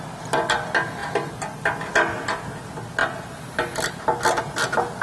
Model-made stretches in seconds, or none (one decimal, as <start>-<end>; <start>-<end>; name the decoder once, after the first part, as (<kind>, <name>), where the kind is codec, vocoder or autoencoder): none